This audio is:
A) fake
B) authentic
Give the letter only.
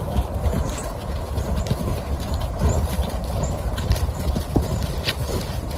B